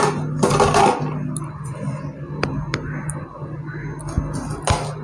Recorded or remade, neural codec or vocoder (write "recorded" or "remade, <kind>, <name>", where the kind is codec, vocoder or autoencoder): recorded